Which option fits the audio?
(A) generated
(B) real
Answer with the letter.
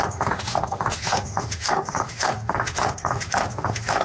A